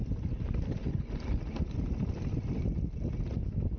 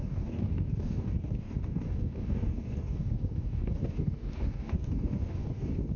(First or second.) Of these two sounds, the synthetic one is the second